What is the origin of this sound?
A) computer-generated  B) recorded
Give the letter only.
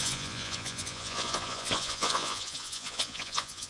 A